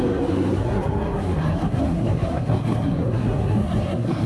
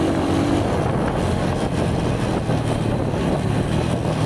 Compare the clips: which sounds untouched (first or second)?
second